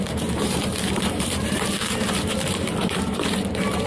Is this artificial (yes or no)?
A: yes